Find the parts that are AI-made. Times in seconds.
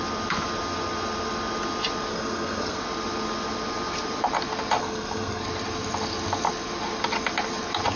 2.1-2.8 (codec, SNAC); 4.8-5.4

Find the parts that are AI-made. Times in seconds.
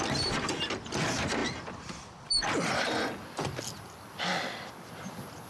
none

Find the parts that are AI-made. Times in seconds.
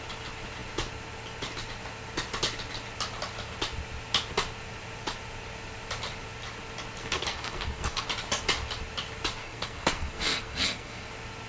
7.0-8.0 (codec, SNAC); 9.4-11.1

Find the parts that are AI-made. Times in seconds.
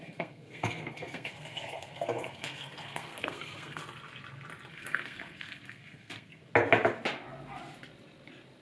0.0-3.8 (codec, SNAC); 4.7-6.4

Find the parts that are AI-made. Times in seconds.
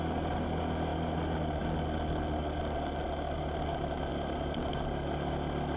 none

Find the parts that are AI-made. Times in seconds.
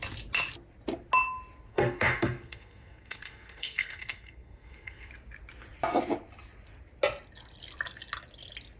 1.7-5.1 (codec, SNAC)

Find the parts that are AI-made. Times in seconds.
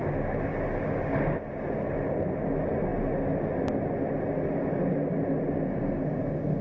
none